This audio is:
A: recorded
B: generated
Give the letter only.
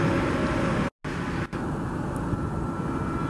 A